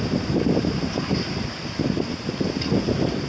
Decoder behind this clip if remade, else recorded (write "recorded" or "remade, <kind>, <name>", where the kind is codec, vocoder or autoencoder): recorded